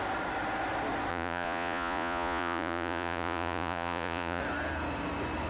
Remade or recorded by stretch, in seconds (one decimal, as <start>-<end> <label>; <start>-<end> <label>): 0.0-1.1 recorded; 1.1-4.4 remade; 4.4-5.5 recorded